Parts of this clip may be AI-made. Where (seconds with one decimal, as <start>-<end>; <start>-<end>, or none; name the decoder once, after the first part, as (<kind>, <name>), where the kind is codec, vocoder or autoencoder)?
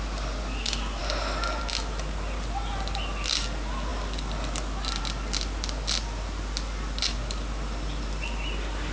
none